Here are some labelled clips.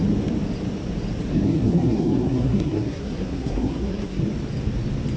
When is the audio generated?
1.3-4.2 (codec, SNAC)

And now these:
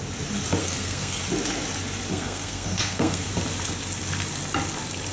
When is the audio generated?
0.6-1.2 (codec, SNAC); 2.1-3.3

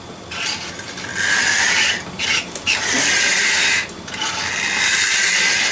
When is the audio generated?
none

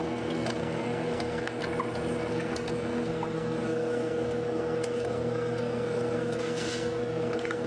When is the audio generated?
0.0-1.6 (codec, SNAC); 2.3-7.7

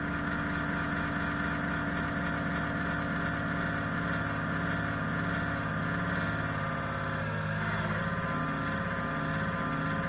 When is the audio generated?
7.2-8.0 (codec, SNAC)

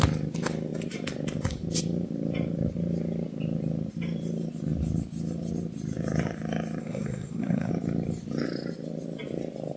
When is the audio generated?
6.8-7.7 (codec, SNAC)